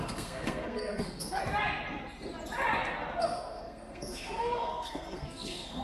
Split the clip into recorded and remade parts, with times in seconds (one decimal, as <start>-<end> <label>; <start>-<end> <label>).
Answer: 0.0-1.4 remade; 1.4-3.2 recorded; 3.2-5.8 remade